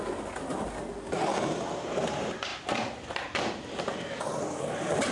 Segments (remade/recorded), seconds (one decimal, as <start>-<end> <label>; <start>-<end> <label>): 0.0-5.1 recorded